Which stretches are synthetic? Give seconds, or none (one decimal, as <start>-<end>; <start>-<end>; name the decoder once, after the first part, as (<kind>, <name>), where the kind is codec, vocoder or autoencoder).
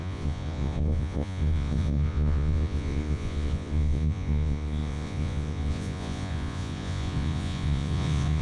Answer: 0.0-8.4 (vocoder, Vocos)